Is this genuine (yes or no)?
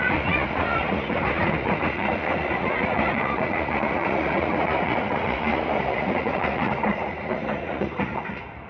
no